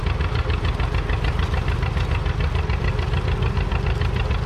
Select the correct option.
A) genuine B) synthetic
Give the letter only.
A